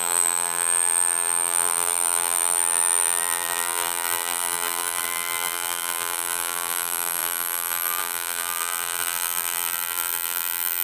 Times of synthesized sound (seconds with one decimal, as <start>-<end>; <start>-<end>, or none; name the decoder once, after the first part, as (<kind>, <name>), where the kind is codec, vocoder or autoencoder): 0.0-10.8 (vocoder, BigVGAN v2)

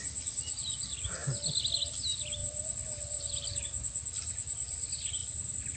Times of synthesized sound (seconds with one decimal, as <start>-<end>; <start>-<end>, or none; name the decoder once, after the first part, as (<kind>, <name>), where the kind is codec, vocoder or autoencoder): 2.4-3.6 (vocoder, BigVGAN v2); 5.2-5.8

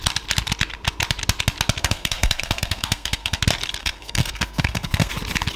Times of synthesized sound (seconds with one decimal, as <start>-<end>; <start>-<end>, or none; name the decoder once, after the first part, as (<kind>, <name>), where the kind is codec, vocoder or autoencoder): 1.8-3.4 (codec, SNAC); 3.8-5.1

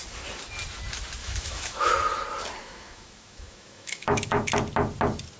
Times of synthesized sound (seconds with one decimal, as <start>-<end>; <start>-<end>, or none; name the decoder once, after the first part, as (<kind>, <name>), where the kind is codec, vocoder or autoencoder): 1.2-1.9 (autoencoder, DAC-VAE); 2.6-4.4